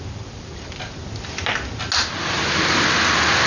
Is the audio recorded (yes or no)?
yes